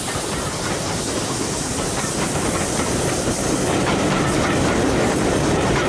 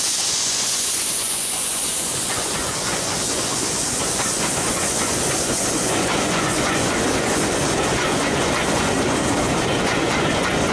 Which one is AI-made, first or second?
second